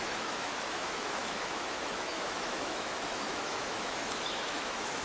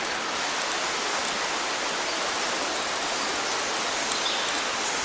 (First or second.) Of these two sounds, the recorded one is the second